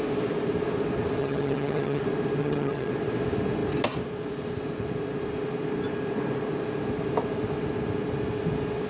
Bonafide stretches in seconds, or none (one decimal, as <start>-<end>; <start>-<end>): 0.0-1.2; 2.0-2.4; 2.9-8.9